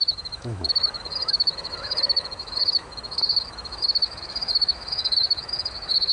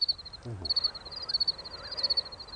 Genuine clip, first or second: second